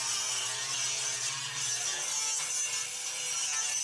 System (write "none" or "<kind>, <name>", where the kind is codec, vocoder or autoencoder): none